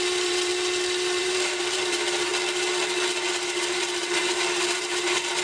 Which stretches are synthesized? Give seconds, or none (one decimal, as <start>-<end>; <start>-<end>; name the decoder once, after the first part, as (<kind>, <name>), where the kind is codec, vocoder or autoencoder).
0.0-0.5 (vocoder, BigVGAN v2); 1.2-2.3; 3.3-5.4